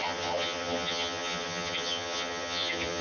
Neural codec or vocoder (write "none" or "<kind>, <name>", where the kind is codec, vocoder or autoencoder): vocoder, HiFi-GAN